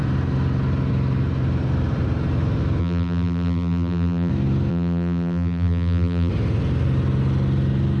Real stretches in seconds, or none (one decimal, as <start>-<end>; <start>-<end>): 0.0-2.8; 4.3-4.7; 6.3-8.0